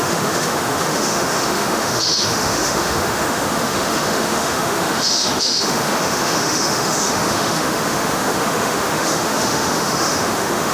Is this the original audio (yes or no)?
no